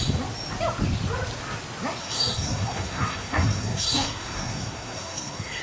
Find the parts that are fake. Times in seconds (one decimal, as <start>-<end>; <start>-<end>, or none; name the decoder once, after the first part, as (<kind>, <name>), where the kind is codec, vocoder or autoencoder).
2.0-5.6 (codec, SNAC)